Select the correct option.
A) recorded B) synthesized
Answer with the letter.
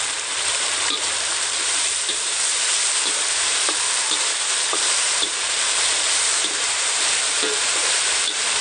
B